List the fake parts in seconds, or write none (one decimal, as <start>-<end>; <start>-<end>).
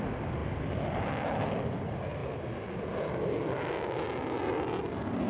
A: none